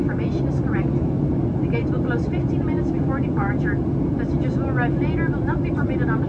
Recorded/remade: recorded